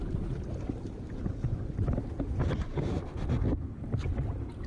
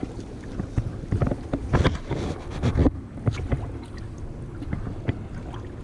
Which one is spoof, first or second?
first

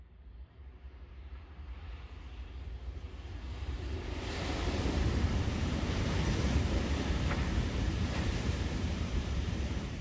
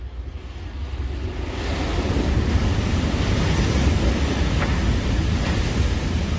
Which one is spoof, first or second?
first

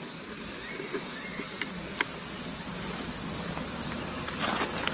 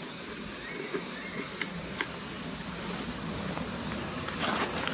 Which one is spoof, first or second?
second